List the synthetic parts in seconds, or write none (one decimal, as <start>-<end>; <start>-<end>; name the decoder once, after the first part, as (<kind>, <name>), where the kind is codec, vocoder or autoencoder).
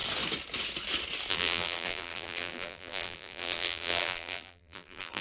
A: 1.3-5.2 (vocoder, BigVGAN v2)